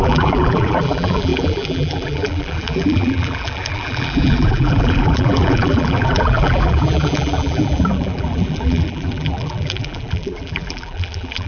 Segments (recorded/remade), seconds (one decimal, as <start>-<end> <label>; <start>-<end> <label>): 0.0-11.5 remade